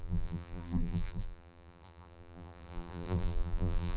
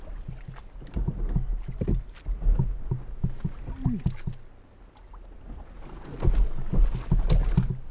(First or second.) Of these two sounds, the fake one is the first